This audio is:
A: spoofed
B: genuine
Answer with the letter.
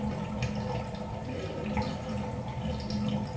B